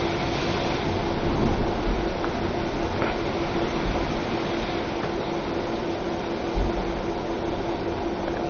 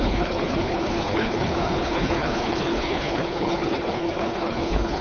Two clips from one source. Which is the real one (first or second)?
first